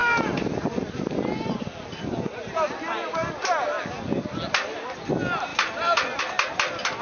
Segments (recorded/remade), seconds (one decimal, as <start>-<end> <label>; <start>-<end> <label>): 0.0-7.0 recorded